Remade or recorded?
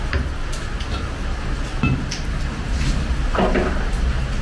recorded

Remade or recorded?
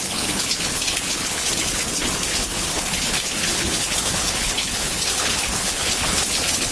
remade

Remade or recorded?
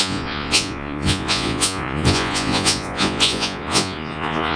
remade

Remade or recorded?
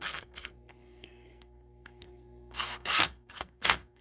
remade